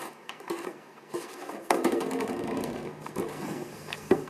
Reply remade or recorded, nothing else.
remade